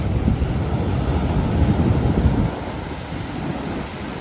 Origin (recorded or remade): recorded